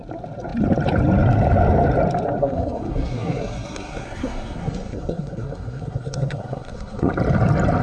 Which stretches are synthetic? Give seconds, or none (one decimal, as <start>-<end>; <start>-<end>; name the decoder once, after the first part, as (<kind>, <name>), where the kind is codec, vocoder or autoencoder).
2.4-7.1 (codec, SNAC)